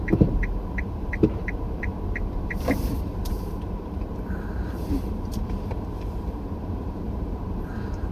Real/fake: fake